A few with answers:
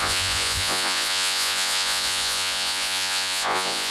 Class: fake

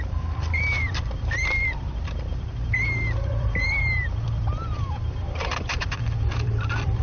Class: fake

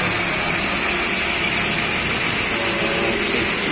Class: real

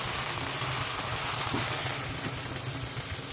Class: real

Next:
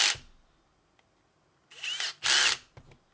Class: real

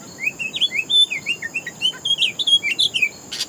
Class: real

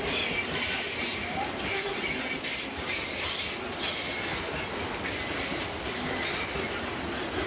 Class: real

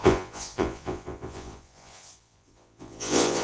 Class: fake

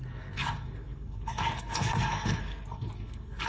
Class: fake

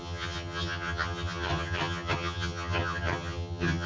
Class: fake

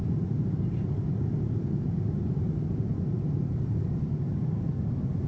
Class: fake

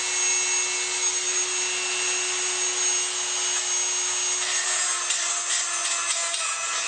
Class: real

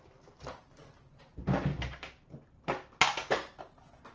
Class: real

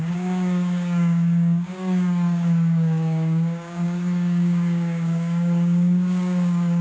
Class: fake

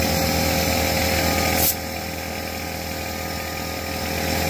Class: real